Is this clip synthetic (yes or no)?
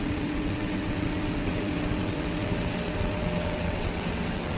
yes